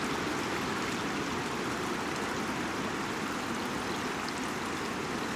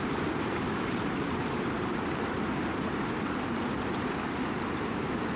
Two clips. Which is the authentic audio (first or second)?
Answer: first